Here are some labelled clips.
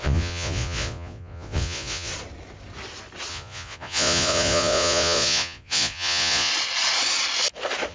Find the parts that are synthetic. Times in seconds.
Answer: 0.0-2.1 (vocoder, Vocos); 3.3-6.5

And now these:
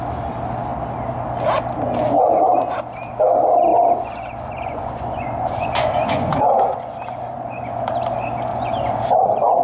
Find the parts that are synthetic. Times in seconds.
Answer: 3.7-7.9 (vocoder, Vocos); 8.5-9.0

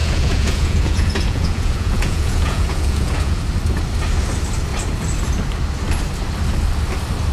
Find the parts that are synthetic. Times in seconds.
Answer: 0.0-3.4 (vocoder, Vocos)

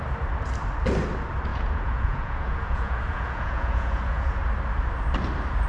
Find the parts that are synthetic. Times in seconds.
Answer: 1.5-4.4 (vocoder, Vocos)